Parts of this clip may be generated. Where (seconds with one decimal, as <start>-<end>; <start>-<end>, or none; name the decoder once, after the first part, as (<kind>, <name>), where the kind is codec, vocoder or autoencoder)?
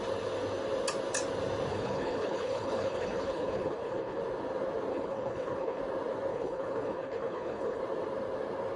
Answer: 1.7-4.2 (codec, HILCodec); 4.9-5.8; 6.3-7.8